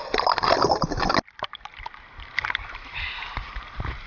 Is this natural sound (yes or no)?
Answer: yes